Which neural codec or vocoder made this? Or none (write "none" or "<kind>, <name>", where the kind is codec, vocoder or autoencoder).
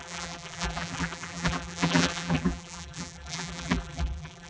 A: vocoder, BigVGAN v2